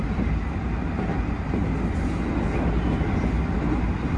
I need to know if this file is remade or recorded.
recorded